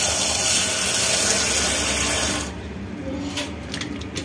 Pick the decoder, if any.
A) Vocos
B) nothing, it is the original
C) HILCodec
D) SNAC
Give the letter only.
B